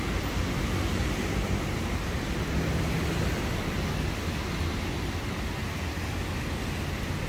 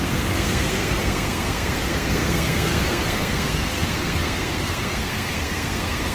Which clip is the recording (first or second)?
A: first